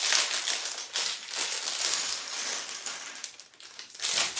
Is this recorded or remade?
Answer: recorded